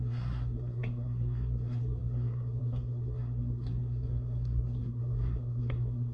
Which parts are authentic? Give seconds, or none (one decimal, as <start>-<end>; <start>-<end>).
none